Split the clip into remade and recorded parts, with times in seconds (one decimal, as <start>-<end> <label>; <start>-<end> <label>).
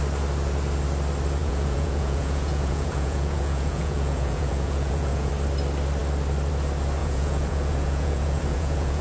0.0-1.4 recorded; 1.4-5.3 remade; 5.3-7.0 recorded; 7.0-9.0 remade